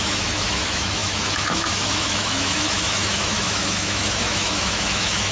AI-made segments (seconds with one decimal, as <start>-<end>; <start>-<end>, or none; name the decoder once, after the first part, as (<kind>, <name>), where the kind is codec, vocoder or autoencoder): 0.0-5.3 (autoencoder, DAC-VAE)

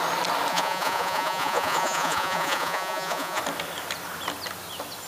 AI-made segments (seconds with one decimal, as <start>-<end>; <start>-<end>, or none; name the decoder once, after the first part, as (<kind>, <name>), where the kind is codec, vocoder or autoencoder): 0.5-3.4 (vocoder, Vocos)

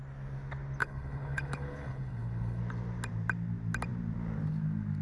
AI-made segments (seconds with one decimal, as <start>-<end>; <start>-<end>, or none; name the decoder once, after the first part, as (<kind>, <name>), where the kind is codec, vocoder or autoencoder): 0.8-2.6 (codec, HILCodec)

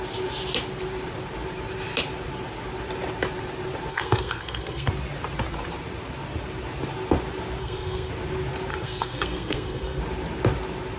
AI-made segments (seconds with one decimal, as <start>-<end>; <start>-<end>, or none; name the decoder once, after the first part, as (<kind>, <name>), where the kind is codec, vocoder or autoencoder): 3.9-4.9 (codec, SNAC); 7.6-8.1; 8.7-10.0

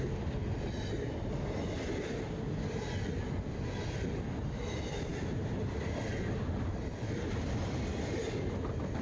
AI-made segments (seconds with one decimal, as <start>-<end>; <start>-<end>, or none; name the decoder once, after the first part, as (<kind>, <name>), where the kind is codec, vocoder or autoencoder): none

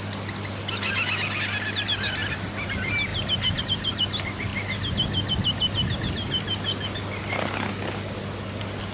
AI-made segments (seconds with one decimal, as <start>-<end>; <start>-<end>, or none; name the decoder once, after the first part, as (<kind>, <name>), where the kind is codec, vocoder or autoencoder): none

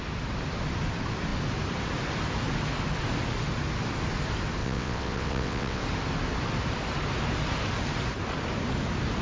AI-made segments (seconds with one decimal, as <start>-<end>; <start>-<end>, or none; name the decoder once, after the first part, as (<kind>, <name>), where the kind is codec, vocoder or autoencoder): 4.6-5.8 (vocoder, WaveNeXt)

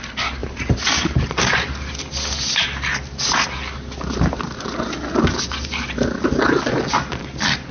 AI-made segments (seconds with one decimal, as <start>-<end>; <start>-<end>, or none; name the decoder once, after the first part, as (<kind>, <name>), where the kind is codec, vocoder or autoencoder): none